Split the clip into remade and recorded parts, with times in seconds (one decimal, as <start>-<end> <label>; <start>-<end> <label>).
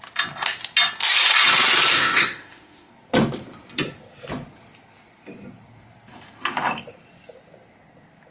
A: 0.0-1.9 recorded; 1.9-2.9 remade; 2.9-8.3 recorded